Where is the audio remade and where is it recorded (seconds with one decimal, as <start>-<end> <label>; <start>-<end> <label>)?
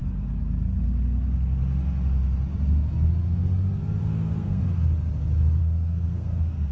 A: 0.0-4.0 recorded; 4.0-4.6 remade; 4.6-5.6 recorded; 5.6-6.7 remade